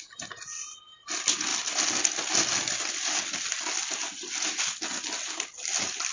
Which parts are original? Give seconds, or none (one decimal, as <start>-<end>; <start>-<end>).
0.0-6.1